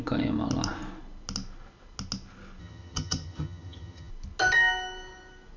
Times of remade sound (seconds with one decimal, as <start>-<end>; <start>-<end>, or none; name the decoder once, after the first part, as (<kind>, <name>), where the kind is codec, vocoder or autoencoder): 2.6-4.1 (vocoder, HiFi-GAN)

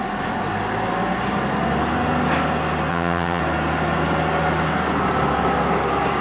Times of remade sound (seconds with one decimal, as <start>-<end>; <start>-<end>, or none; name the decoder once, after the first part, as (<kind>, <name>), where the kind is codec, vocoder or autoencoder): 2.9-3.4 (vocoder, HiFi-GAN)